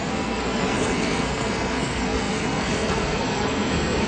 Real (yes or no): no